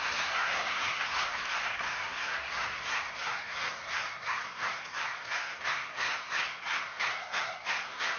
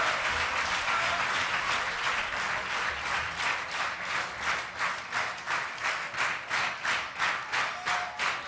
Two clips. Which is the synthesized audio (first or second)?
first